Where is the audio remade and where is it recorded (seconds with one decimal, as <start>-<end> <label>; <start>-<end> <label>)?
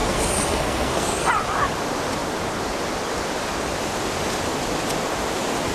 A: 0.0-1.3 remade; 1.3-5.7 recorded